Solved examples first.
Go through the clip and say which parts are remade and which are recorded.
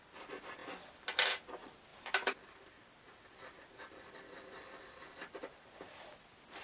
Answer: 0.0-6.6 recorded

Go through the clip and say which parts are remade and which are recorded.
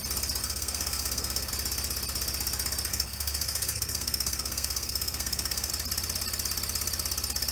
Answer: 0.0-0.4 recorded; 0.4-1.5 remade; 1.5-2.9 recorded; 2.9-5.7 remade; 5.7-7.5 recorded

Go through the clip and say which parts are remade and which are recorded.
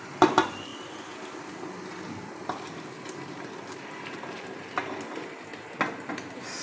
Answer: 0.0-6.6 recorded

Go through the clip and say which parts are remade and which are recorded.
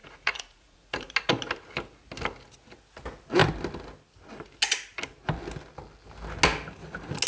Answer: 0.0-1.1 remade; 1.1-7.3 recorded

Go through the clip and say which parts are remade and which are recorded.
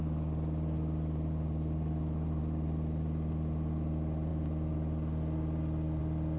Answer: 0.0-6.4 recorded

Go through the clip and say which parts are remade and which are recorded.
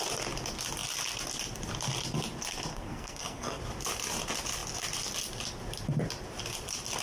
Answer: 0.0-2.7 recorded; 2.7-3.6 remade; 3.6-7.0 recorded